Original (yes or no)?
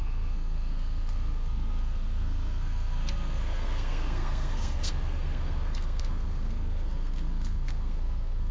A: no